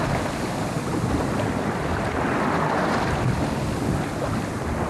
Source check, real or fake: real